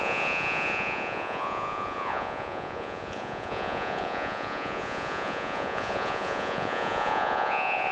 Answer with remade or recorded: remade